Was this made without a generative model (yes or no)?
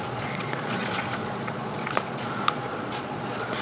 no